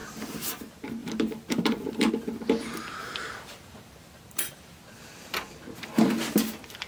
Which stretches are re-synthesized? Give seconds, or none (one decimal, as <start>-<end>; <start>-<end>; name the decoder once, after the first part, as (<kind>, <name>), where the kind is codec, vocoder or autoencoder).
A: 0.0-0.6 (vocoder, BigVGAN v2); 1.0-2.1; 3.0-4.8